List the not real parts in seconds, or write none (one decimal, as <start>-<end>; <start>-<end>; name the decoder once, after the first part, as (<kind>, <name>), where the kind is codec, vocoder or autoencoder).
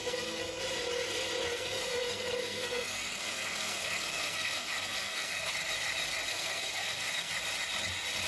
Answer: 0.0-0.6 (codec, SNAC); 1.5-5.5; 6.3-7.3